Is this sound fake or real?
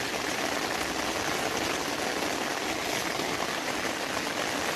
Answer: real